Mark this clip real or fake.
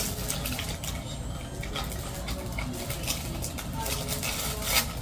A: real